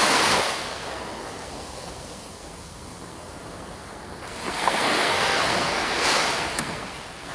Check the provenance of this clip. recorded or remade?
remade